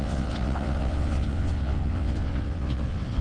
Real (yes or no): no